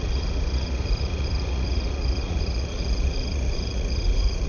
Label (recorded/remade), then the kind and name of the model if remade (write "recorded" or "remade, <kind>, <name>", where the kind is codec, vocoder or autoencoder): remade, vocoder, Vocos